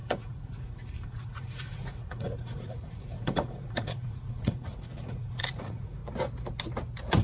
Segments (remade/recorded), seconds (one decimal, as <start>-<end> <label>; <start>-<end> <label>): 0.0-6.0 remade; 6.0-7.2 recorded